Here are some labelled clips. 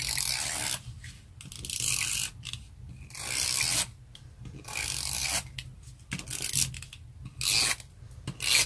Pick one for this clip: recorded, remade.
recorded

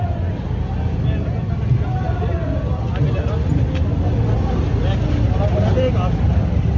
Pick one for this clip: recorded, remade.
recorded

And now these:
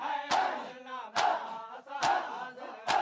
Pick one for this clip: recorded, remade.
recorded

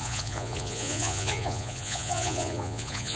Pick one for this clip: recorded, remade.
remade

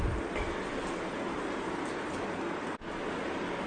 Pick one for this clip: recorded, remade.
recorded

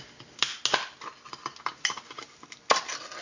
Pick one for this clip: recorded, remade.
recorded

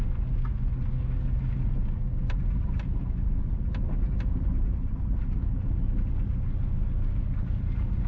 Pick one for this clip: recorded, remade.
recorded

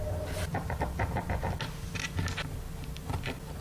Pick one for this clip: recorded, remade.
recorded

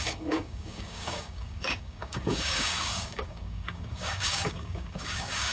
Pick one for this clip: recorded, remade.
remade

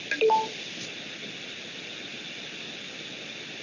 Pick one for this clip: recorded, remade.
recorded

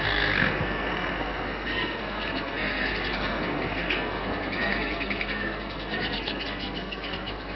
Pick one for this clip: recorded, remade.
remade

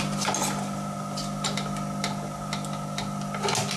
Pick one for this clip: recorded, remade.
recorded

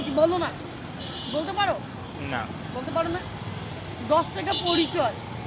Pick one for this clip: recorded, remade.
recorded